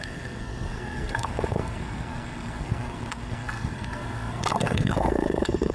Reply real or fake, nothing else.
fake